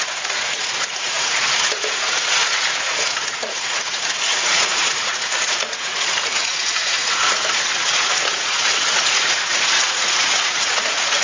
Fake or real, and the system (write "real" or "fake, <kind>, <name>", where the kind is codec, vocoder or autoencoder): fake, vocoder, Vocos